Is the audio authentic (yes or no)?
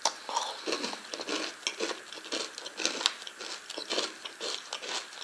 yes